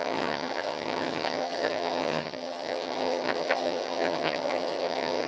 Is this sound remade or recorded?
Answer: remade